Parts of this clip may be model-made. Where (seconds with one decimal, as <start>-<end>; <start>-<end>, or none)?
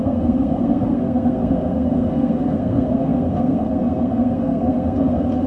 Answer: 0.0-5.5